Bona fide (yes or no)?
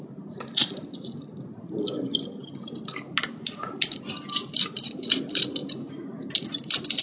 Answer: yes